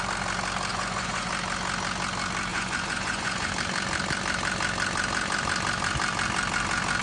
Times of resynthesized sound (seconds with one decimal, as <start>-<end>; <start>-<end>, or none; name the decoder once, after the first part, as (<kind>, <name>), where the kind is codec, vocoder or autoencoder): 0.7-1.3 (vocoder, Vocos); 2.5-3.5